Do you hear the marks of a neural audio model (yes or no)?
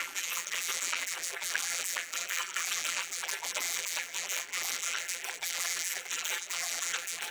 yes